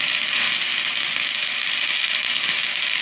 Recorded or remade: recorded